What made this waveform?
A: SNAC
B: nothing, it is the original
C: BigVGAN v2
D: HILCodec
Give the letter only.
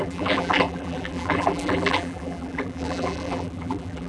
C